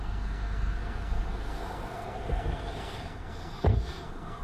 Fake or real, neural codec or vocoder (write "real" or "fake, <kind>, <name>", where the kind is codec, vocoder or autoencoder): fake, codec, SNAC